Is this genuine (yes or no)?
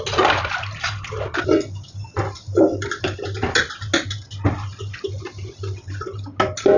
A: yes